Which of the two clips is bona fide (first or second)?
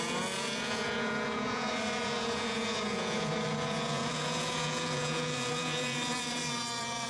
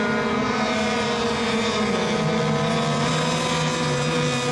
second